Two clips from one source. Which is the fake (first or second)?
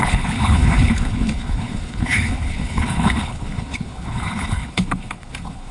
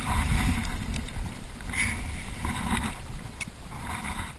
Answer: first